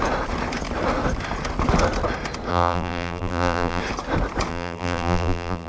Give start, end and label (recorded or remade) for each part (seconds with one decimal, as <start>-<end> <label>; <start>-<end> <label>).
0.0-2.5 recorded; 2.5-3.8 remade; 3.8-4.5 recorded; 4.5-5.7 remade